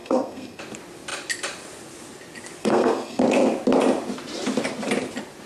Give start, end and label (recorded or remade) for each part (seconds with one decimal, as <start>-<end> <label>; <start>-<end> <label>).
0.0-0.6 remade; 0.6-2.6 recorded; 2.6-3.2 remade; 3.2-5.5 recorded